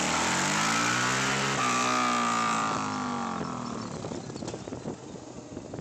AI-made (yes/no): no